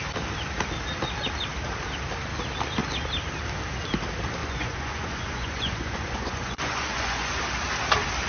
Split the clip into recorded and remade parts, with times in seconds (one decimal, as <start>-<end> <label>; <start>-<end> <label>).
0.0-4.4 recorded; 4.4-7.4 remade; 7.4-8.3 recorded